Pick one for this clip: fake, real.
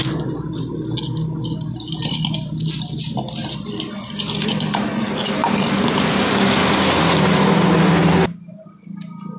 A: real